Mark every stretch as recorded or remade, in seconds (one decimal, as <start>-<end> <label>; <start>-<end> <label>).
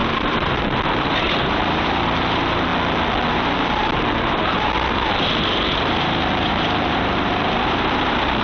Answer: 0.0-2.7 remade; 2.7-3.3 recorded; 3.3-8.4 remade